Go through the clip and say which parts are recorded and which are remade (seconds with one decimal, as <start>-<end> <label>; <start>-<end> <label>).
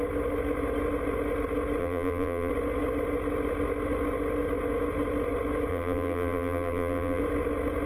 0.0-1.8 recorded; 1.8-2.5 remade; 2.5-5.7 recorded; 5.7-7.2 remade; 7.2-7.9 recorded